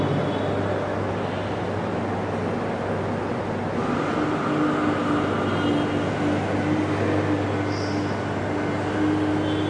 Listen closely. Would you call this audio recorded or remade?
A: recorded